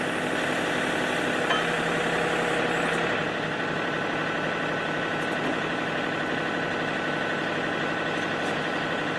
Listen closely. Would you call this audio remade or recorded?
recorded